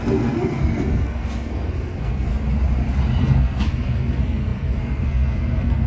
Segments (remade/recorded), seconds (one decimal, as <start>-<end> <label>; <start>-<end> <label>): 0.0-2.3 remade; 2.3-3.2 recorded; 3.2-5.9 remade